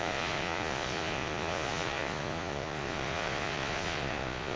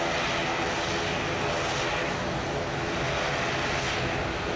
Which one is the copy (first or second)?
first